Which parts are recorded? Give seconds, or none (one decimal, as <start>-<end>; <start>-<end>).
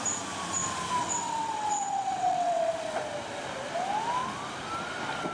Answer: 0.0-1.0; 2.7-5.3